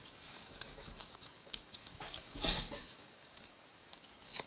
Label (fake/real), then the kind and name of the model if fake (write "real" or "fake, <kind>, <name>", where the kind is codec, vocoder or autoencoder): fake, codec, DAC